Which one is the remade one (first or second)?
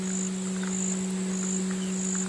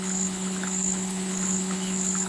second